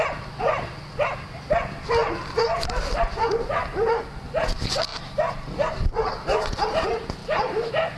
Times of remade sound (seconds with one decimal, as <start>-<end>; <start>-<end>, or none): 2.0-4.0; 7.2-8.0